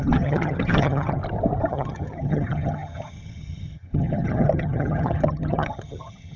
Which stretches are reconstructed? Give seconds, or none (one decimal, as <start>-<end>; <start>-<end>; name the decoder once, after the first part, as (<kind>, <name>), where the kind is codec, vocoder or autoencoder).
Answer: 0.0-1.2 (vocoder, HiFi-GAN); 1.7-6.4